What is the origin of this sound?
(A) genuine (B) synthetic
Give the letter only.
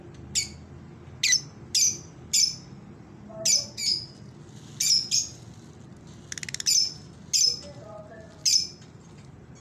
A